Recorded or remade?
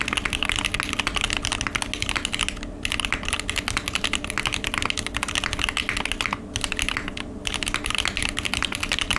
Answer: recorded